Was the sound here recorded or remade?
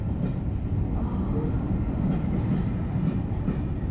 recorded